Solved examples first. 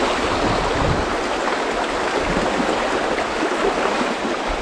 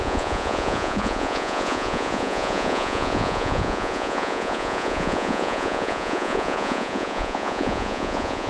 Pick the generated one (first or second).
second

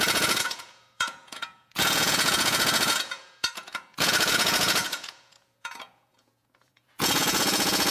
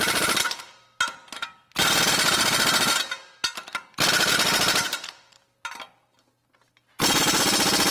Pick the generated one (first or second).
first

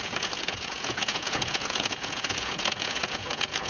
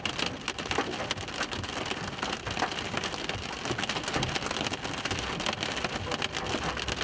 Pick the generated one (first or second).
first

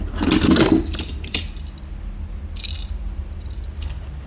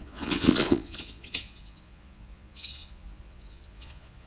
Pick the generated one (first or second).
second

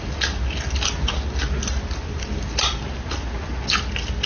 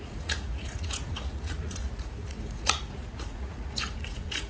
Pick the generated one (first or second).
second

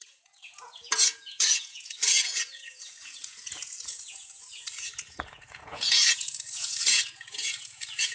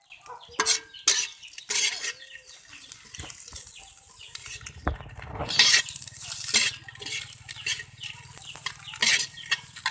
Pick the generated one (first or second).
first